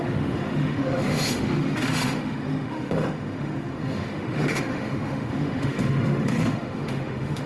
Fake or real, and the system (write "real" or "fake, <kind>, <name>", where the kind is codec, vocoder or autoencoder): fake, autoencoder, DAC-VAE